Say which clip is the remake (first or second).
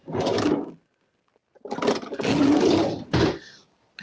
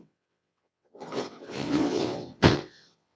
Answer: second